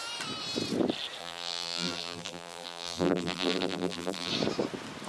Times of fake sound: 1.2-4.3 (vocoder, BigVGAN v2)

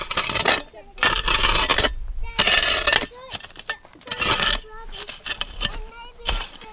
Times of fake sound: none

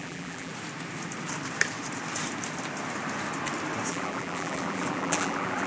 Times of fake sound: 0.0-0.5 (vocoder, BigVGAN v2); 3.9-5.7

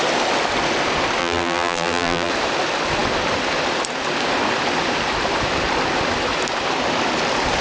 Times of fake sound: 1.2-2.3 (vocoder, BigVGAN v2)